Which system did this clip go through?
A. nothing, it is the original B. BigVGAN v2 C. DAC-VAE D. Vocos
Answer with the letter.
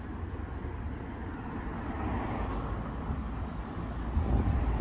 A